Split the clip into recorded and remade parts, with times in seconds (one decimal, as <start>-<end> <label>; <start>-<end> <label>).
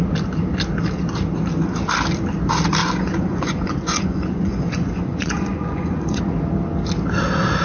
0.0-2.8 recorded; 2.8-6.2 remade; 6.2-7.6 recorded